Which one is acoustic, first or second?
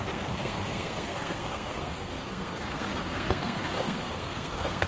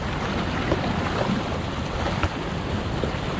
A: second